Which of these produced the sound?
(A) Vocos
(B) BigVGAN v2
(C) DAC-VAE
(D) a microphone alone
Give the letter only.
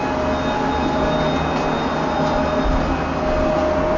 D